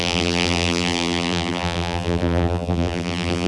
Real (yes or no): no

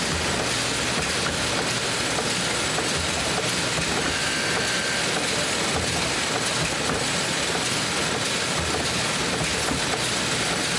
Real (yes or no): yes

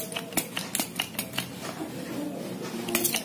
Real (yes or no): yes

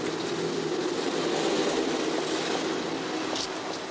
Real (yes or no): yes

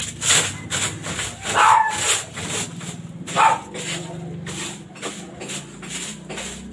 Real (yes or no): yes